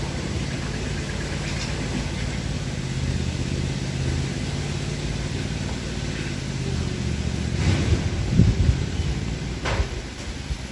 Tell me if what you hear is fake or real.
real